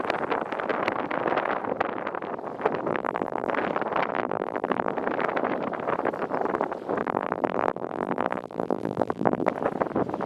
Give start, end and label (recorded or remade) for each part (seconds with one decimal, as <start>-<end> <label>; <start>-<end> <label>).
0.0-2.9 recorded; 2.9-3.5 remade; 3.5-4.1 recorded; 4.1-4.9 remade; 4.9-7.0 recorded; 7.0-9.5 remade; 9.5-10.3 recorded